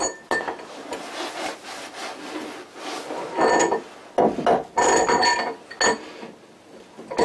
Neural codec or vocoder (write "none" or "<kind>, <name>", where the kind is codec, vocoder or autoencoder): none